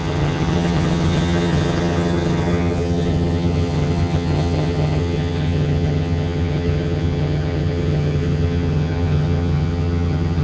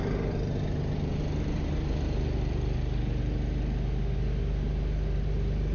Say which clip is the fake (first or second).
first